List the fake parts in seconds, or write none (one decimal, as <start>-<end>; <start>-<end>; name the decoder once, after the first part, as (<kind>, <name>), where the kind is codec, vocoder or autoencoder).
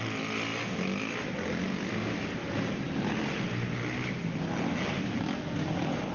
none